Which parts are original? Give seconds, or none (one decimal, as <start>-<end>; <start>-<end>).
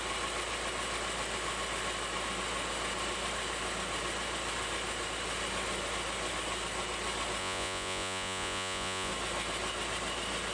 0.0-7.4; 9.1-10.5